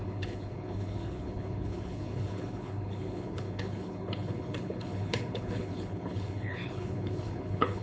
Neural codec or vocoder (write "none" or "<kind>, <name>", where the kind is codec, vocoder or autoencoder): codec, HILCodec